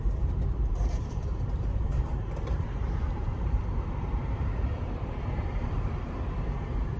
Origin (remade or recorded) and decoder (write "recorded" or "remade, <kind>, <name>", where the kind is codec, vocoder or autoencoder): remade, vocoder, BigVGAN v2